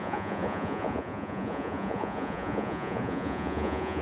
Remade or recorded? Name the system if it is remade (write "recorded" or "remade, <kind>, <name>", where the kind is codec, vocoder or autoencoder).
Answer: remade, vocoder, Vocos